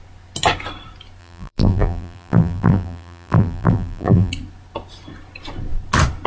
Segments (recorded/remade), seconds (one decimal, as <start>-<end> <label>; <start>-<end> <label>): 0.0-1.2 recorded; 1.2-4.3 remade; 4.3-6.3 recorded